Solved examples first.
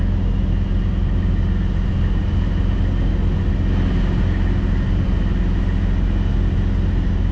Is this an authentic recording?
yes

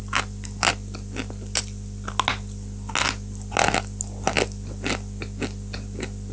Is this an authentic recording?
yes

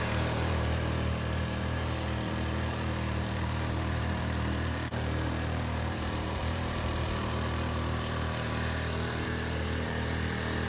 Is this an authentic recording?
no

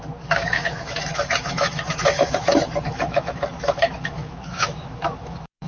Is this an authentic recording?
no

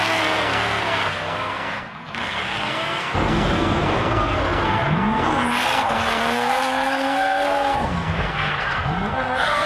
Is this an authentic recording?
no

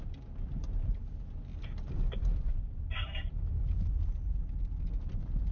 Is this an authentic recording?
yes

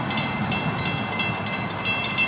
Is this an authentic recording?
yes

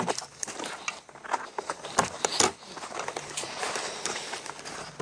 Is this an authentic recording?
yes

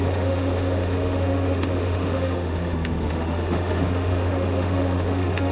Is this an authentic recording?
no